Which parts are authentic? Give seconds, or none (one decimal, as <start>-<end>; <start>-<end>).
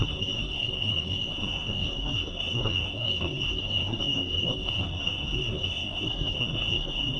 none